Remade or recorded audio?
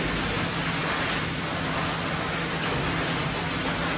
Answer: recorded